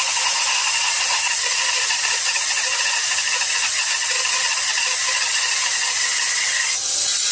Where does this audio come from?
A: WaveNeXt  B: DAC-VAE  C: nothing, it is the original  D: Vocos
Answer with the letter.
C